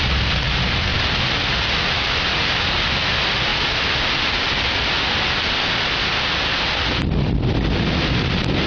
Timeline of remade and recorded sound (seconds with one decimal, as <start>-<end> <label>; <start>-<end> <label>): 0.0-8.7 recorded